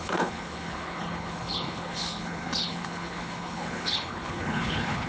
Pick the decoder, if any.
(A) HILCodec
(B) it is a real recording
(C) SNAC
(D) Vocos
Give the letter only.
A